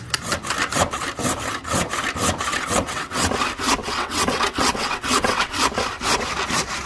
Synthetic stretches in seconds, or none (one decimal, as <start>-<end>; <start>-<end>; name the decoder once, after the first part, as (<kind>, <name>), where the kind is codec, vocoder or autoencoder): 2.5-3.3 (vocoder, WaveNeXt); 3.8-5.5